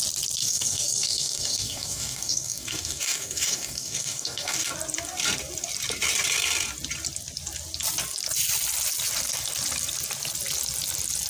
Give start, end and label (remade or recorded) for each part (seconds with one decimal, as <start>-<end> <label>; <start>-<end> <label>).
0.0-0.4 recorded; 0.4-4.7 remade; 4.7-11.3 recorded